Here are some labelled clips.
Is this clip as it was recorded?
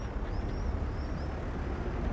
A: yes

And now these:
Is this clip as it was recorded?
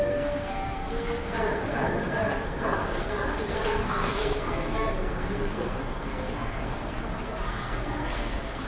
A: no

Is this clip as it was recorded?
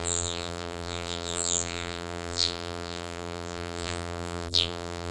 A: no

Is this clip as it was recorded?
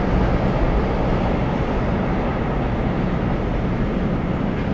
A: yes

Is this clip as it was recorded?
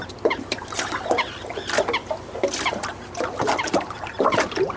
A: yes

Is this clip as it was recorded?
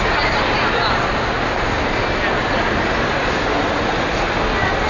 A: yes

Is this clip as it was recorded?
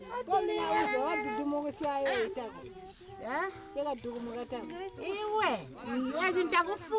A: yes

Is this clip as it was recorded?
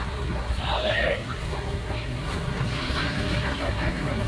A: no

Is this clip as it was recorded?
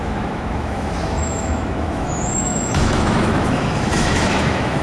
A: no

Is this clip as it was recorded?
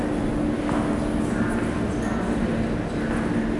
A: yes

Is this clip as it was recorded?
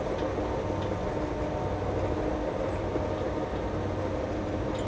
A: yes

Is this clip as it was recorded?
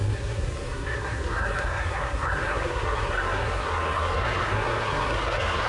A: no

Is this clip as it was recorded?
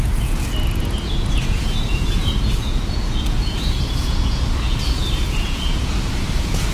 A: no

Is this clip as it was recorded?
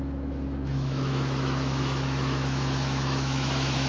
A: no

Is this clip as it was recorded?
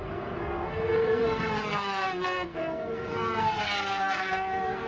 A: no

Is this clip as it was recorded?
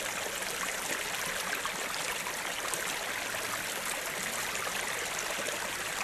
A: yes